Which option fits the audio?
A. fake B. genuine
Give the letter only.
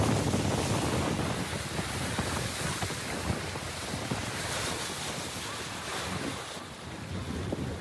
B